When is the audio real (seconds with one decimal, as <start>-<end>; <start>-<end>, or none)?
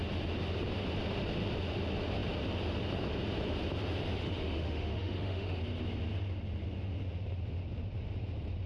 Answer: 0.0-4.2; 5.6-8.7